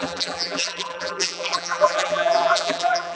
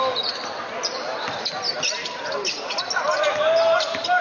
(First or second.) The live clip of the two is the second